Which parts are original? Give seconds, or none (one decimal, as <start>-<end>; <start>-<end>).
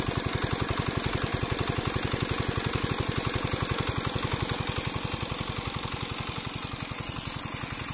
0.0-7.9